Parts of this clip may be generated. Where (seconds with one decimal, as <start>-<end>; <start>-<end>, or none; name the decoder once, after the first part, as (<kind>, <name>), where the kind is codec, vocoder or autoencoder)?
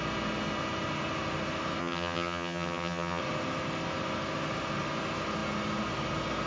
1.8-3.2 (vocoder, HiFi-GAN)